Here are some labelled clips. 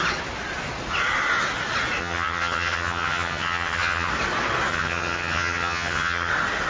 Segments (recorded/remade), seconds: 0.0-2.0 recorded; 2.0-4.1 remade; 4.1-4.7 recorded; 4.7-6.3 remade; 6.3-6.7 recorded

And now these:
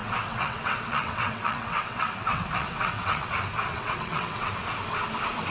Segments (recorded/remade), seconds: 0.0-3.3 remade; 3.3-3.7 recorded; 3.7-4.5 remade; 4.5-5.5 recorded

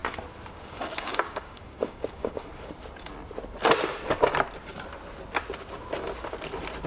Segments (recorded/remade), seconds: 0.0-0.5 recorded; 0.5-2.5 remade; 2.5-6.9 recorded

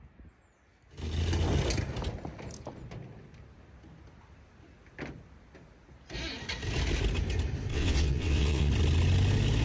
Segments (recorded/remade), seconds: 0.0-7.7 recorded; 7.7-8.7 remade; 8.7-9.6 recorded

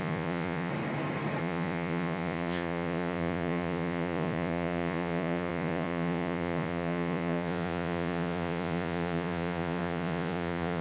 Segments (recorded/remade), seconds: 0.0-0.7 remade; 0.7-1.4 recorded; 1.4-10.8 remade

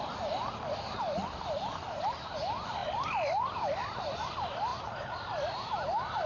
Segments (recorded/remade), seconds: 0.0-6.3 recorded

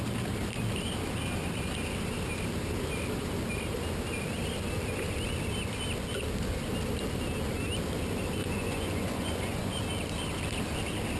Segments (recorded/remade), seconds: 0.0-8.4 recorded; 8.4-9.8 remade; 9.8-11.2 recorded

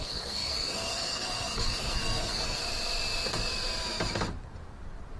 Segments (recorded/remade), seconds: 0.0-2.6 remade; 2.6-5.2 recorded